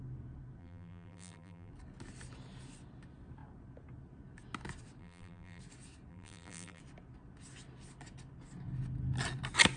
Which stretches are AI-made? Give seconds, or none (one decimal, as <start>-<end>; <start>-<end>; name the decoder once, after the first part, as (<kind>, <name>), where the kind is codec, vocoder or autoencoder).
0.6-1.7 (vocoder, BigVGAN v2); 5.0-5.6; 6.1-6.8